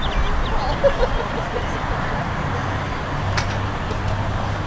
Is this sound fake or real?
real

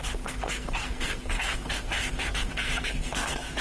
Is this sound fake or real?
fake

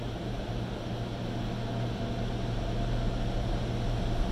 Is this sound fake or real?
real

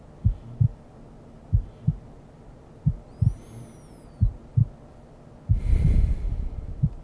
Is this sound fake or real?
real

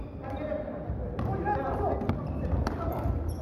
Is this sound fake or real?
real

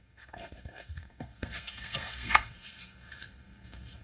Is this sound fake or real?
fake